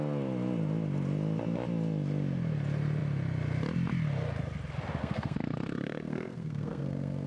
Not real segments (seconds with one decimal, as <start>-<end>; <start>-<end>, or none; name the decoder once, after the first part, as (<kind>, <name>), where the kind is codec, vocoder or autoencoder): 5.0-7.3 (codec, SNAC)